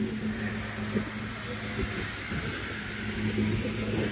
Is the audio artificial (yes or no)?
no